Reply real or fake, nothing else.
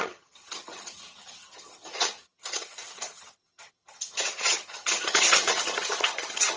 fake